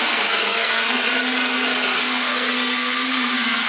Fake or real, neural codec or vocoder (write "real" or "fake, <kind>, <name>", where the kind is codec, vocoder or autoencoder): fake, codec, SNAC